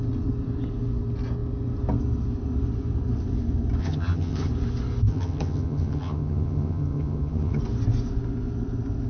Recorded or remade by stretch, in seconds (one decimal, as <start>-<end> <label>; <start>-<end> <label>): 0.0-3.8 recorded; 3.8-4.5 remade; 4.5-5.1 recorded; 5.1-7.6 remade; 7.6-9.1 recorded